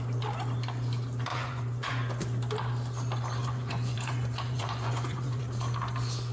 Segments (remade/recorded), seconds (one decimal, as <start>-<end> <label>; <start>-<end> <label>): 0.0-1.3 recorded; 1.3-1.9 remade; 1.9-3.4 recorded; 3.4-5.4 remade; 5.4-6.3 recorded